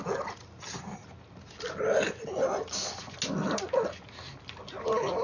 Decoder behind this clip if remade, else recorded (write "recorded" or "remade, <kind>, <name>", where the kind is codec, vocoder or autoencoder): recorded